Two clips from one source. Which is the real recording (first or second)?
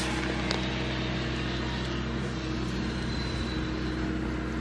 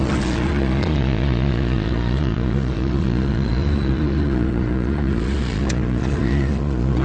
first